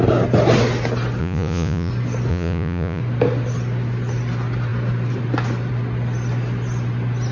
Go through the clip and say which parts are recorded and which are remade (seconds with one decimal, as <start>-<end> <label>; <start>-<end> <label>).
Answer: 0.0-1.2 recorded; 1.2-1.9 remade; 1.9-2.3 recorded; 2.3-3.0 remade; 3.0-7.3 recorded